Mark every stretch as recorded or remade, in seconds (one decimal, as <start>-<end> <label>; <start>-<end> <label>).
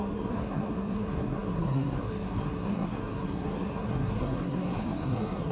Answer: 0.0-5.5 remade